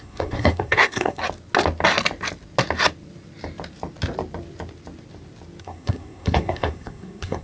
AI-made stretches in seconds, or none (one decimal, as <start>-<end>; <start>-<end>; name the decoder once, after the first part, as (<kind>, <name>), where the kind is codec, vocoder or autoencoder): 0.0-1.2 (codec, SNAC); 5.6-7.4